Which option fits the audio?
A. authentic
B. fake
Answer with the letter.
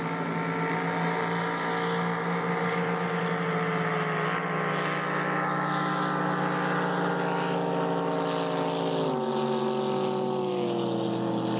A